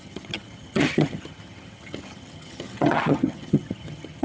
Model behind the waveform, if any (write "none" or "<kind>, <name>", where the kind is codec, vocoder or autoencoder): vocoder, HiFi-GAN